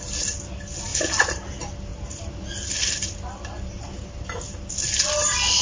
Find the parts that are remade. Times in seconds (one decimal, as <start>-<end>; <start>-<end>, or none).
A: 0.9-1.5

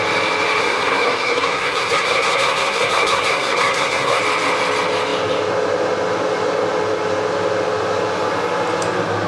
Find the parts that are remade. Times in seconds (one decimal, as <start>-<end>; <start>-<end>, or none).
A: 0.6-4.2

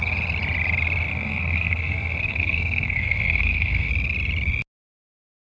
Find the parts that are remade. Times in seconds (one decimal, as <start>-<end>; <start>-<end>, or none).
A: 1.1-3.9

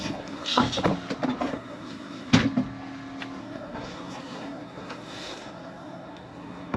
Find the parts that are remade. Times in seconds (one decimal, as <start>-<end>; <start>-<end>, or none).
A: 0.0-0.6; 1.5-2.3; 3.4-6.8

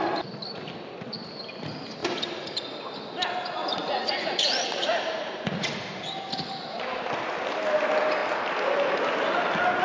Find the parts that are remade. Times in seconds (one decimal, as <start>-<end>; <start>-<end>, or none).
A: 3.6-5.7

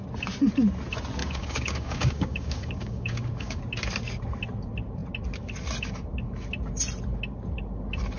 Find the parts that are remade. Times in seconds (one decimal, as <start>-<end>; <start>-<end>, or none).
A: 1.2-3.6